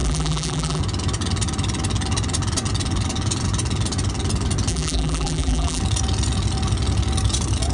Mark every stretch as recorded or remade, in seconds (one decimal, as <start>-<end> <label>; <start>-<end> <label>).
0.0-0.8 remade; 0.8-4.7 recorded; 4.7-5.8 remade; 5.8-7.7 recorded